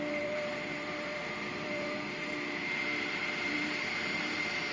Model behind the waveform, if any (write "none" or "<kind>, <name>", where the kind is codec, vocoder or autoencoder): vocoder, BigVGAN v2